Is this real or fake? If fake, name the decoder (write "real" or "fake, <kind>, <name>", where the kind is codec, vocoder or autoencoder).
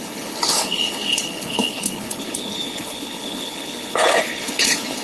fake, codec, HILCodec